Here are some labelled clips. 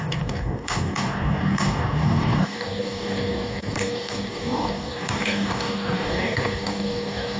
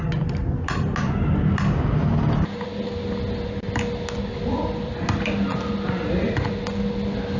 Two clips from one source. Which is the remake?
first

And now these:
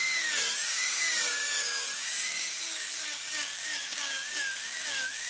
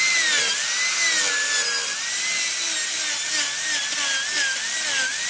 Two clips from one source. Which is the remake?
first